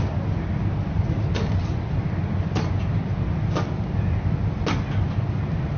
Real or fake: real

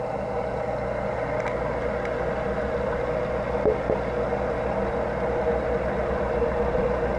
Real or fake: real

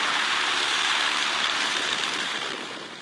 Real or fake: fake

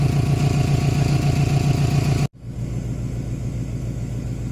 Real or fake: real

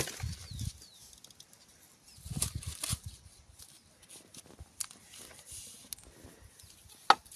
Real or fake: real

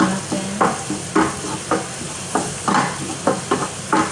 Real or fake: real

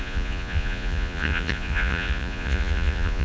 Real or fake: fake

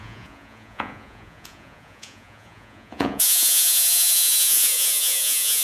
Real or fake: fake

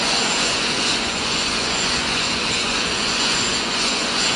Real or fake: fake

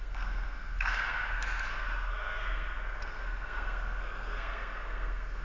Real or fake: fake